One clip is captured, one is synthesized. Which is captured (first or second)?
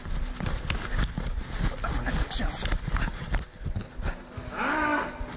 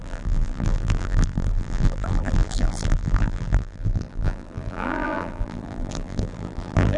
first